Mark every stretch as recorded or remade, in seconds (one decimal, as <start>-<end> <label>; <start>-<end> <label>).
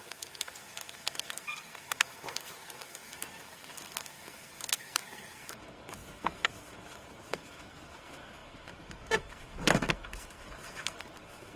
0.0-11.6 remade